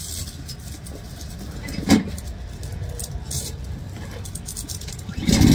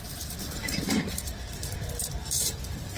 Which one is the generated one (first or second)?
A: second